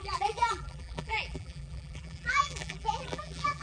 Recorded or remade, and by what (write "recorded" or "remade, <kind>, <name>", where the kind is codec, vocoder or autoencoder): remade, vocoder, BigVGAN v2